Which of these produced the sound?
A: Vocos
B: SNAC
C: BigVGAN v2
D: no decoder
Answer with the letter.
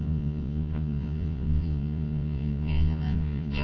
A